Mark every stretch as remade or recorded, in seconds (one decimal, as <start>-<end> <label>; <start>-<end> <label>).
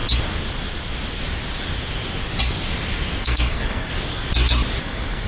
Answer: 0.0-3.2 recorded; 3.2-3.9 remade; 3.9-4.8 recorded; 4.8-5.3 remade